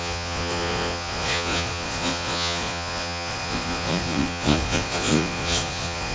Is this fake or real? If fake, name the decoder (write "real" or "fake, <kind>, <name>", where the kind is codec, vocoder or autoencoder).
fake, vocoder, Vocos